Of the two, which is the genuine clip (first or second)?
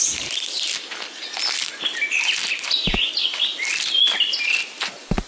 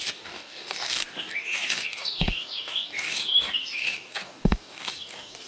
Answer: first